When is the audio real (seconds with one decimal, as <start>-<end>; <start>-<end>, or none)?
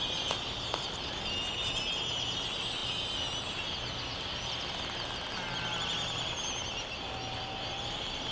0.0-8.3